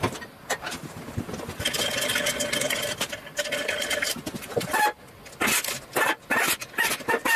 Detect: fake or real real